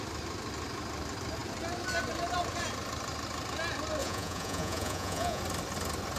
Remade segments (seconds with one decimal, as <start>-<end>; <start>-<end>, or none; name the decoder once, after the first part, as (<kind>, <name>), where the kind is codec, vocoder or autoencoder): 4.0-5.4 (vocoder, Vocos)